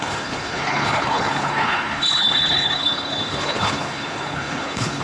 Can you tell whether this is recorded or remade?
remade